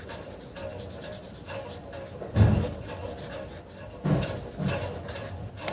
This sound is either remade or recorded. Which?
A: recorded